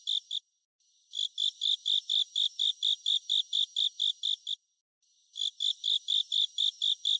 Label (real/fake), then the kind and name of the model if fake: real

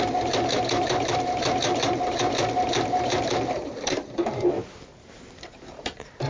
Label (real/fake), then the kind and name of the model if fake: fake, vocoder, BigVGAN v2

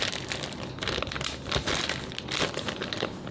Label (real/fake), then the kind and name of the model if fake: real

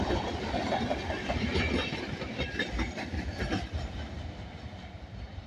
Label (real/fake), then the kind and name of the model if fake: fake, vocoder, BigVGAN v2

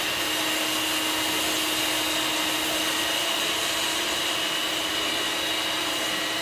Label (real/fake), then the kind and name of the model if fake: real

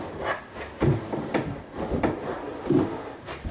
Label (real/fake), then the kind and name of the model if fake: fake, vocoder, BigVGAN v2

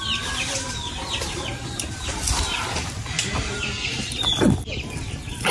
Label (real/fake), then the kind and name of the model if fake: fake, vocoder, BigVGAN v2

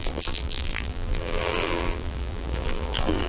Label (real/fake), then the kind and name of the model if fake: fake, vocoder, BigVGAN v2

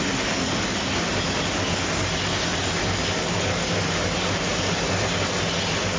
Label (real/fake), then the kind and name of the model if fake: real